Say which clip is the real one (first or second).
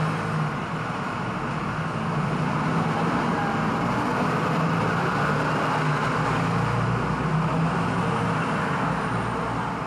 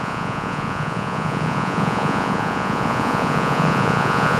first